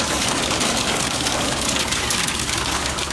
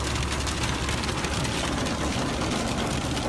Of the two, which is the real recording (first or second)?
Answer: second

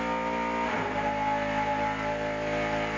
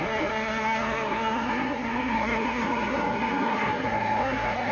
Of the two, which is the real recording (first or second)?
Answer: first